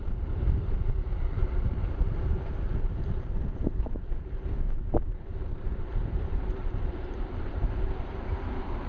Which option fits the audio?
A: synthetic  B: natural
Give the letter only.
A